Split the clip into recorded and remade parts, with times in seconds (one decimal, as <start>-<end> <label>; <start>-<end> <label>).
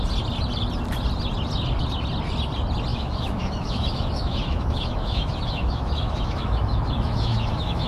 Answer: 0.0-2.9 recorded; 2.9-7.9 remade